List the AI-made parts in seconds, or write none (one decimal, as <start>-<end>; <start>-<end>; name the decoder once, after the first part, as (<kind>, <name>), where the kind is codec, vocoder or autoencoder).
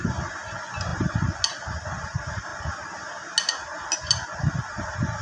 none